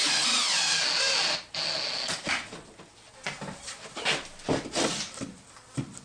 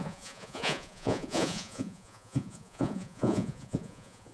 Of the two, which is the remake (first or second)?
second